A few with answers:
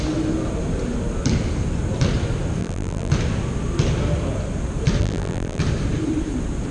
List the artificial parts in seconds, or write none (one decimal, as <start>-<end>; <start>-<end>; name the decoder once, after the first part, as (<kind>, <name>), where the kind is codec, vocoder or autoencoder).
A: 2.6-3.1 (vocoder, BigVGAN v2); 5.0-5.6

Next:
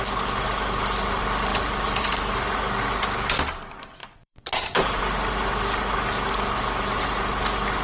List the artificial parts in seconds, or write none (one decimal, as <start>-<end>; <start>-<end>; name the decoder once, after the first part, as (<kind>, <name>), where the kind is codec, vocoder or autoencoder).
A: 1.5-2.5 (vocoder, BigVGAN v2); 4.0-5.3

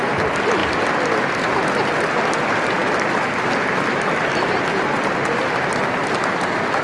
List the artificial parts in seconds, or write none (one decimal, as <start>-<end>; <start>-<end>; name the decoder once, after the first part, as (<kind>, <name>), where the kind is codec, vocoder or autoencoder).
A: none